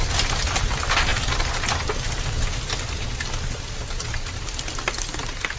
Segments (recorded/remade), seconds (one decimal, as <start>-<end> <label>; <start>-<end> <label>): 0.0-5.6 recorded